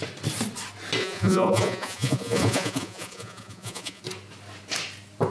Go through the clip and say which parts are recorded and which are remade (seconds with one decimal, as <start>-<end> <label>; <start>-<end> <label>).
0.0-1.0 recorded; 1.0-4.0 remade; 4.0-5.3 recorded